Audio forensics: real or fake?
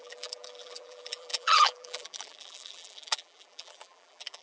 fake